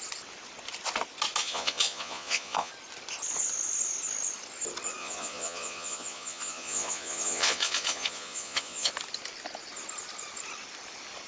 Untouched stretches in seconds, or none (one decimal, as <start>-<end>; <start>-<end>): 0.0-1.4; 2.7-5.0; 8.9-11.3